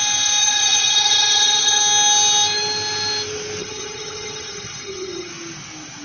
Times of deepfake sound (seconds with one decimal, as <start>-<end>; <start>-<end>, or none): 0.4-1.8; 3.6-5.3